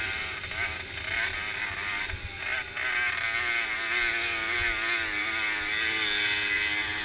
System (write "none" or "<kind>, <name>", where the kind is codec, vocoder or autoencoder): none